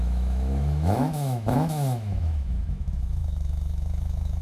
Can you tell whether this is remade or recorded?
remade